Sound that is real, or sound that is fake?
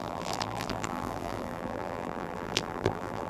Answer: fake